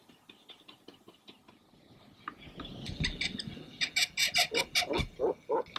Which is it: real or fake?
real